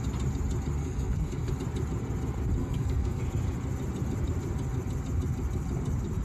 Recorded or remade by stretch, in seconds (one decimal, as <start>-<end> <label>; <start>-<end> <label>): 0.0-0.8 recorded; 0.8-1.5 remade; 1.5-2.6 recorded; 2.6-3.2 remade; 3.2-6.2 recorded